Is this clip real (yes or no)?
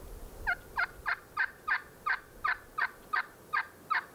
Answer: yes